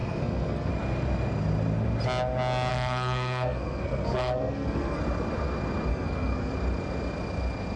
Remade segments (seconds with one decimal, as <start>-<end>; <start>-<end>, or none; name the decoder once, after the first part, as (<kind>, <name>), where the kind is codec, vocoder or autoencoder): 0.0-0.7 (codec, SNAC); 2.7-5.0; 5.9-6.5